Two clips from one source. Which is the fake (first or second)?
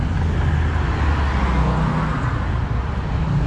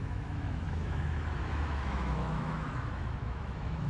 second